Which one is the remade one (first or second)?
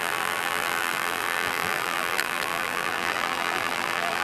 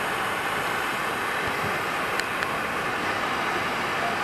first